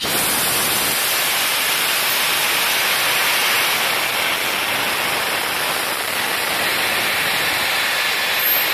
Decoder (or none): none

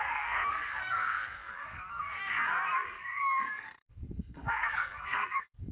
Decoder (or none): codec, SNAC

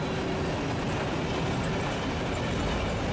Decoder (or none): none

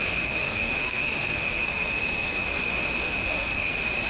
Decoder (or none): codec, SNAC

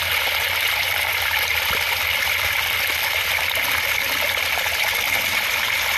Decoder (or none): none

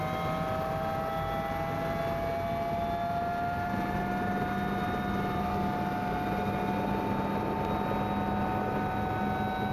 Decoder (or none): none